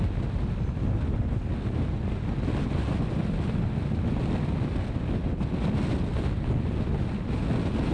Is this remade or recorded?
recorded